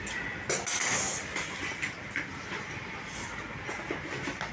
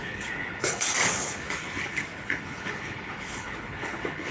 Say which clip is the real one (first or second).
first